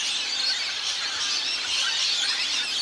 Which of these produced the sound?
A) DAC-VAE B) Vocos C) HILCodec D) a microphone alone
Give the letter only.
D